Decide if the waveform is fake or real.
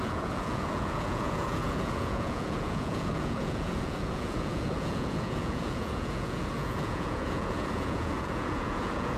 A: fake